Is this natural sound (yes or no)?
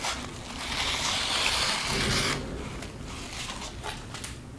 yes